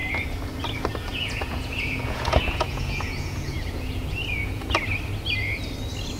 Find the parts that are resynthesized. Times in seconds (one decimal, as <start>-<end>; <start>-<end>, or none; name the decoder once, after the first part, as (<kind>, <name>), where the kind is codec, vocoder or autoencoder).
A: 1.1-4.8 (vocoder, Vocos)